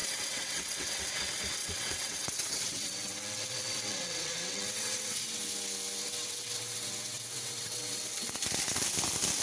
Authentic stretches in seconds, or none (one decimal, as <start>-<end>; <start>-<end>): 1.0-1.6; 5.4-6.0; 8.0-9.4